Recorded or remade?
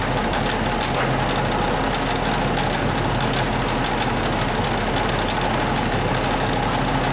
recorded